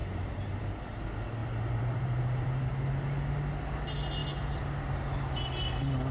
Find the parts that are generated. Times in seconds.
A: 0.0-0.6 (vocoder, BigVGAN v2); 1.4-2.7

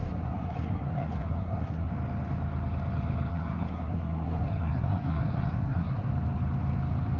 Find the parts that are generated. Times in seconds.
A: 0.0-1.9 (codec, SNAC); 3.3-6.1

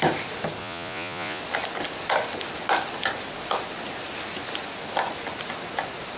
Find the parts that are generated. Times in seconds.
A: 0.6-1.4 (vocoder, Vocos)

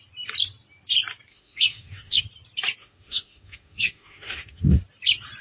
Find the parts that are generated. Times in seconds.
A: 1.3-2.2 (autoencoder, DAC-VAE); 2.8-4.8

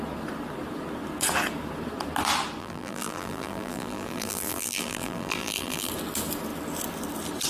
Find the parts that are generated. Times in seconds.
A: 2.6-5.9 (vocoder, BigVGAN v2)

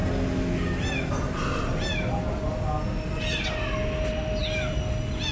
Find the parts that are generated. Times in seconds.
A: none

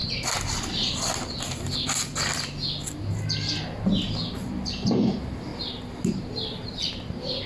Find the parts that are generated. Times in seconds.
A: none

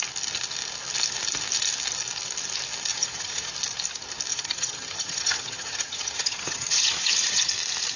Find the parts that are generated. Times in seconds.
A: 2.9-3.5 (vocoder, HiFi-GAN); 4.3-7.5